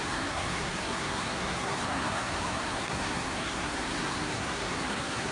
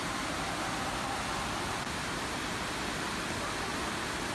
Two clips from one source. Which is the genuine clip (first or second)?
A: second